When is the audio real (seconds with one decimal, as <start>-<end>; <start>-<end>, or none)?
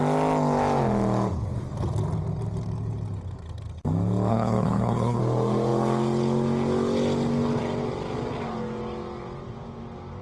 0.0-4.3; 5.2-10.2